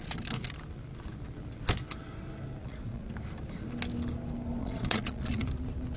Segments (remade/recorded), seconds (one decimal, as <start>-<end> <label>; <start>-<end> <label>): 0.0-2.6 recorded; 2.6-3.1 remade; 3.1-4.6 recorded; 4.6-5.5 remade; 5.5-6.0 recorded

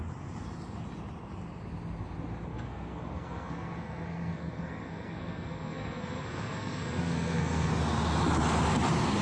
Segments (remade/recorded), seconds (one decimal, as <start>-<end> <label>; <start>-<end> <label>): 0.0-2.5 recorded; 2.5-7.7 remade; 7.7-9.2 recorded

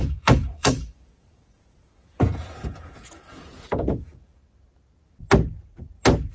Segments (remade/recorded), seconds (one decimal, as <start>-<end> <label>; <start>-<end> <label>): 0.0-4.4 remade; 4.4-6.3 recorded

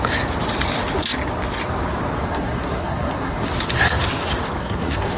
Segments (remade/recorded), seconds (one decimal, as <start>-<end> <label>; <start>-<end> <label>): 0.0-2.3 recorded; 2.3-3.5 remade; 3.5-4.6 recorded; 4.6-5.2 remade

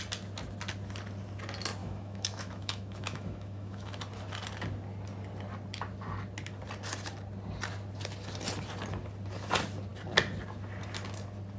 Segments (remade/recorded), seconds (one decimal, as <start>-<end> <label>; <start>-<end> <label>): 0.0-1.8 recorded; 1.8-4.0 remade; 4.0-11.6 recorded